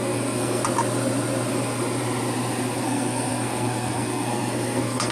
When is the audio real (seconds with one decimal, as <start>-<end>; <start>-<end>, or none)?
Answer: 0.6-2.8